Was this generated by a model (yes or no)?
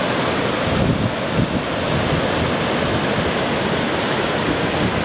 no